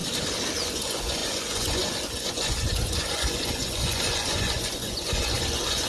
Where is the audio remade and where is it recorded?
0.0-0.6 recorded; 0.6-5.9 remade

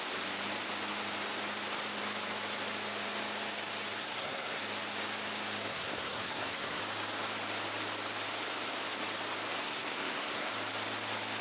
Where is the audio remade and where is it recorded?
0.0-4.0 recorded; 4.0-4.6 remade; 4.6-5.7 recorded; 5.7-6.8 remade; 6.8-9.6 recorded; 9.6-10.5 remade; 10.5-11.4 recorded

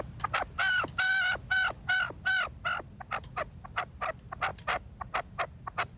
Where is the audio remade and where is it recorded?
0.0-6.0 recorded